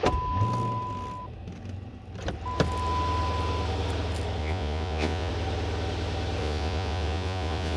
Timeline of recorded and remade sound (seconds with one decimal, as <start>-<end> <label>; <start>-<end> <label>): 0.0-4.4 recorded; 4.4-5.3 remade; 5.3-6.4 recorded; 6.4-7.8 remade